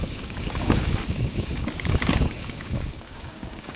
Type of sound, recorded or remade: remade